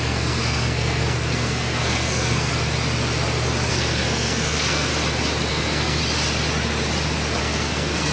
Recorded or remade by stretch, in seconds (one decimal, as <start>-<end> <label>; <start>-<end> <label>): 0.0-2.5 remade; 2.5-3.7 recorded; 3.7-4.9 remade; 4.9-5.5 recorded; 5.5-6.0 remade; 6.0-7.4 recorded; 7.4-8.1 remade

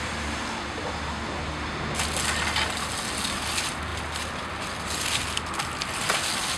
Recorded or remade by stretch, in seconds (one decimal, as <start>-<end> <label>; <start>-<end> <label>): 0.0-6.6 recorded

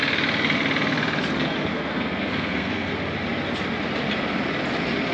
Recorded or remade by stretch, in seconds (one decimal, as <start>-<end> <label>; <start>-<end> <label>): 0.0-1.7 recorded; 1.7-2.9 remade; 2.9-5.1 recorded

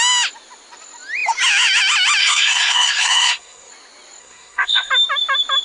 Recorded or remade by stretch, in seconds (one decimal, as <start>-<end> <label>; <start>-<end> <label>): 0.0-2.2 recorded; 2.2-3.7 remade; 3.7-4.2 recorded; 4.2-4.9 remade; 4.9-5.6 recorded

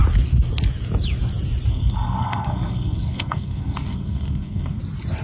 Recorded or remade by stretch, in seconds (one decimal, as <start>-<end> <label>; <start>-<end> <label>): 0.0-1.7 recorded; 1.7-4.8 remade; 4.8-5.2 recorded

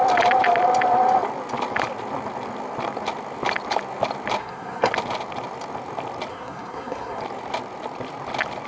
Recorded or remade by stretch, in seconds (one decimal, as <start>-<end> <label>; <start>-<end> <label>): 0.0-4.4 recorded; 4.4-4.9 remade; 4.9-6.3 recorded; 6.3-7.2 remade; 7.2-8.7 recorded

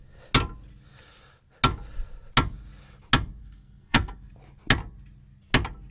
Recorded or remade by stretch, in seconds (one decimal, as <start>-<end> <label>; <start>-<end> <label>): 0.0-3.4 recorded; 3.4-4.3 remade; 4.3-5.9 recorded

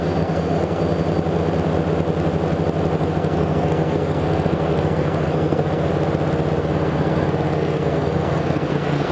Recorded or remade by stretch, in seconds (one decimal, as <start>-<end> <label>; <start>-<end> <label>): 0.0-0.8 remade; 0.8-3.0 recorded; 3.0-5.9 remade; 5.9-6.6 recorded; 6.6-9.1 remade